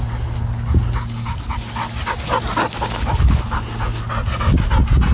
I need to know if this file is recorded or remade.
recorded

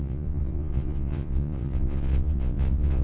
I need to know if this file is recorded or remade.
remade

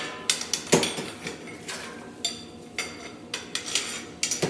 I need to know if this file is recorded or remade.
recorded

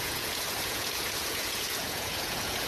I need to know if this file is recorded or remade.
remade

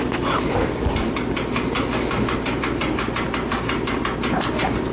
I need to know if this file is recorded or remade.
recorded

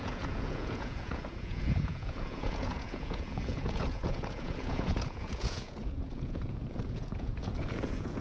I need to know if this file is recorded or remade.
remade